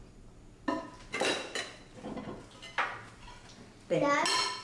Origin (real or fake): real